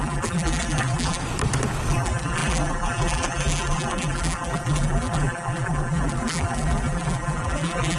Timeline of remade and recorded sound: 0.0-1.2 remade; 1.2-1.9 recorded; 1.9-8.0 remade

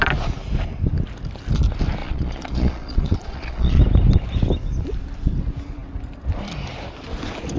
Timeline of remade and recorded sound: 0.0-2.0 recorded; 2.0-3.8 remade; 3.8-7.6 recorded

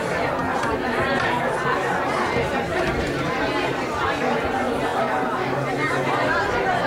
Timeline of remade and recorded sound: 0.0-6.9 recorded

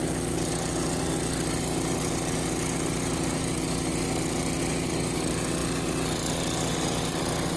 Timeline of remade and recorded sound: 0.0-7.6 recorded